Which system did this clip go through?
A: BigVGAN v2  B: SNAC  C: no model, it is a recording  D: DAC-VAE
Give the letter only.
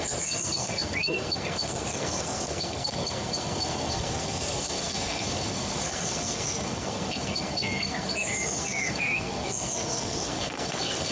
B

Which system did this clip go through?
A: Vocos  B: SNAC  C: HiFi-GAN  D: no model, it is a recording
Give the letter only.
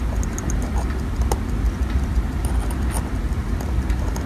D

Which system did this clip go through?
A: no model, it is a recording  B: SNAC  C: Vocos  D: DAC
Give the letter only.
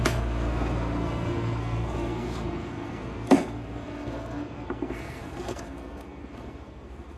B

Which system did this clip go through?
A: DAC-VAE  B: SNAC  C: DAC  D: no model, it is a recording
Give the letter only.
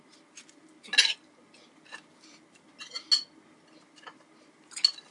D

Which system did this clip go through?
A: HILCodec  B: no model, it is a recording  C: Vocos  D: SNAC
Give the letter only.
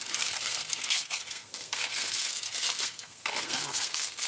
D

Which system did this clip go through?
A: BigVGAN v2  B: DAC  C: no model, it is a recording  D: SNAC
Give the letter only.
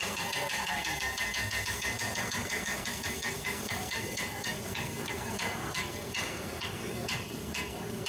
D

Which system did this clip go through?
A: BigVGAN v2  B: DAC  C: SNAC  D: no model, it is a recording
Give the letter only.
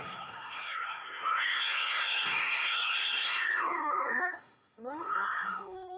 C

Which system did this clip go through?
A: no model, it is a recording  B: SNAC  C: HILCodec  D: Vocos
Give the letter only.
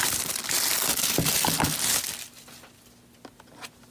A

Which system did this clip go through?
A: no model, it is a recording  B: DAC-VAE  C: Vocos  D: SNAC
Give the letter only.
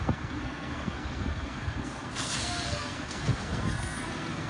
D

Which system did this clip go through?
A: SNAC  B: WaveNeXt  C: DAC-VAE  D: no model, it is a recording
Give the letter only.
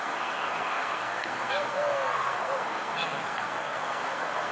A